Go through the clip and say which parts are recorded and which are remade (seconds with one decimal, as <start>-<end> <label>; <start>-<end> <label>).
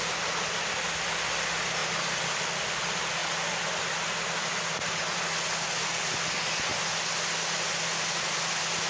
0.0-8.9 recorded